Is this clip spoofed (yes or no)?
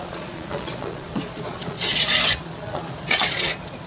yes